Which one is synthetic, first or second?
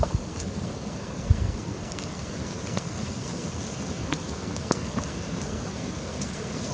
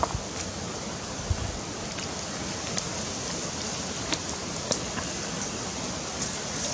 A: first